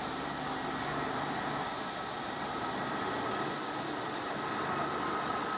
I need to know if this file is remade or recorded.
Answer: recorded